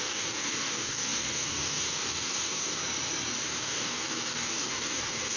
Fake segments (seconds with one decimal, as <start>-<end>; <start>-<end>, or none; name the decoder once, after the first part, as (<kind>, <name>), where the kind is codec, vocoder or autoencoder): 0.0-2.8 (codec, DAC); 3.6-5.4